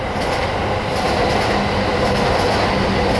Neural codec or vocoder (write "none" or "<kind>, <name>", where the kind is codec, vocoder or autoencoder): none